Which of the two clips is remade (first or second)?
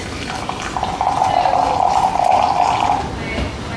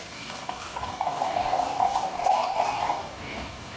second